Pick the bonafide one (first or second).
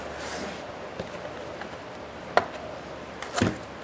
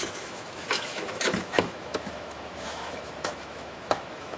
first